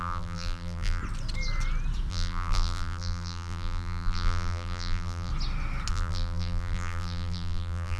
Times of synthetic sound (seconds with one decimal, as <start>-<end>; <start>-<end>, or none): 0.0-1.0; 2.1-5.3; 5.9-8.0